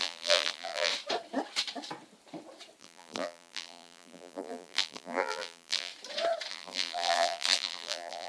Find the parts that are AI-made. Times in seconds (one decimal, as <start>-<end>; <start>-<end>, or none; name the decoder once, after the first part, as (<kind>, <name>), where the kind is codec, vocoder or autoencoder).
0.0-0.9 (vocoder, BigVGAN v2); 2.8-5.9; 6.5-8.3